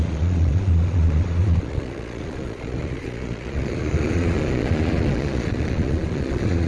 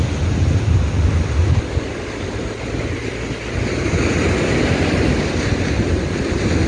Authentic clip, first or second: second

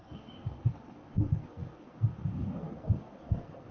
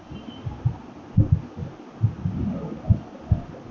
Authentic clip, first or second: second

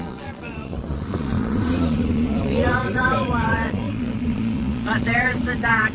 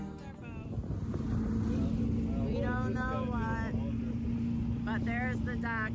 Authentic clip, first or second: second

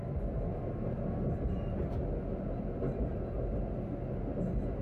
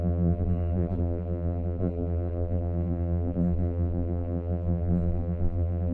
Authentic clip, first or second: first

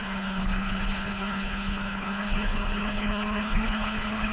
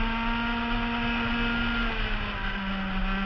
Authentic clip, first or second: second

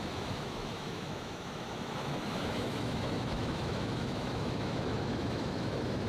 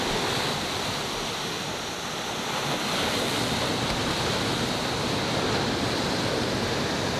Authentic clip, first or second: second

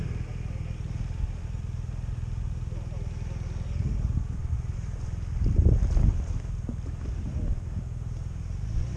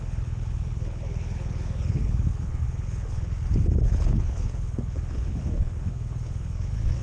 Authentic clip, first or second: first